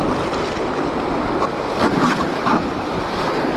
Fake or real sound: real